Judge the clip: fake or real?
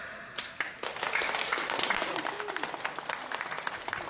real